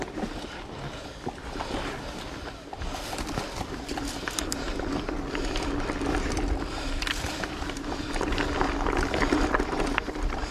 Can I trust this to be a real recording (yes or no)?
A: yes